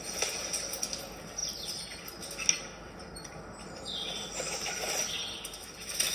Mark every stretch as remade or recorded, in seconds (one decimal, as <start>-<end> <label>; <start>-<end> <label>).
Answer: 0.0-6.1 recorded